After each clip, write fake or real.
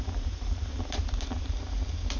fake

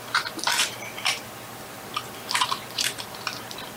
fake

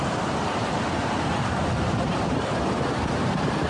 fake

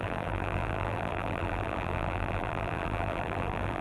fake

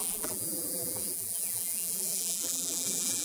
fake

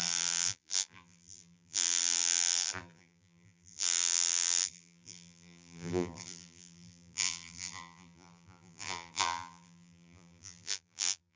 fake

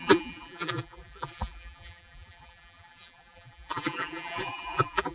fake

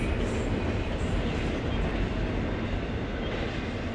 real